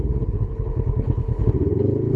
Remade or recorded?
remade